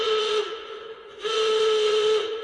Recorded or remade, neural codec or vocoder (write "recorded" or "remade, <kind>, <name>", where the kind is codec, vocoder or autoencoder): remade, vocoder, Vocos